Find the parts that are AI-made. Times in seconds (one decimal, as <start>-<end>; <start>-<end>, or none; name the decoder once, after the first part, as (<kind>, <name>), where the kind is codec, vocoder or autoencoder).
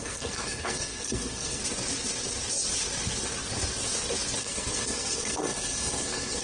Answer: 0.0-1.6 (codec, SNAC); 4.4-6.4